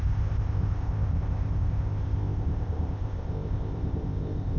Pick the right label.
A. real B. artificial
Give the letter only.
B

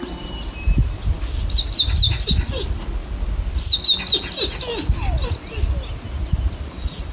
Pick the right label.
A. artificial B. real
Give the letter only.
B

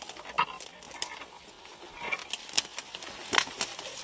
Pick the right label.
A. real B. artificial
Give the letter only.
A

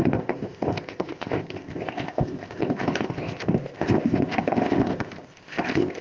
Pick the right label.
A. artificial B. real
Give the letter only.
A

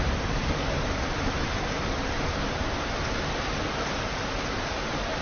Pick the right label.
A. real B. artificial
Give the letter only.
A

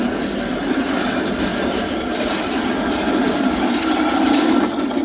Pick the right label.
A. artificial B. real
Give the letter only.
B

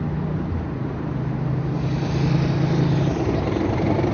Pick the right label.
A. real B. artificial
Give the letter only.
A